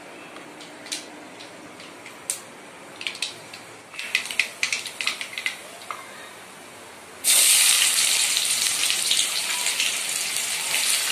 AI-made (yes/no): no